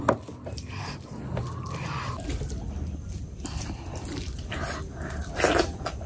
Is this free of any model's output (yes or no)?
yes